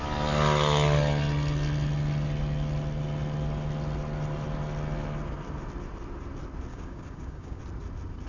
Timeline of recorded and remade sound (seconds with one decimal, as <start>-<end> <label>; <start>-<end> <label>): 0.0-6.7 recorded; 6.7-7.6 remade; 7.6-8.3 recorded